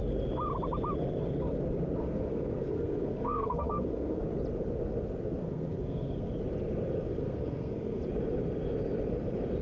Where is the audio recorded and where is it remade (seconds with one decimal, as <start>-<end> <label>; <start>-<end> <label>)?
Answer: 0.0-2.0 recorded; 2.0-4.2 remade; 4.2-5.4 recorded; 5.4-6.3 remade; 6.3-7.2 recorded; 7.2-8.0 remade; 8.0-9.6 recorded

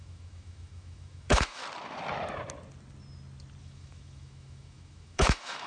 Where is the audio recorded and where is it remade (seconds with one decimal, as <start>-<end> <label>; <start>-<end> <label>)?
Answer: 0.0-1.6 remade; 1.6-3.6 recorded; 3.6-5.7 remade